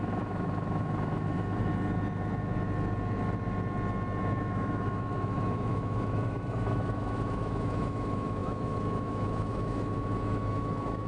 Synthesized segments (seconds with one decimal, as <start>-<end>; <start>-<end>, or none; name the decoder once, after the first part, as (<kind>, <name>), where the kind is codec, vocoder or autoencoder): 0.0-1.7 (autoencoder, DAC-VAE); 4.2-11.1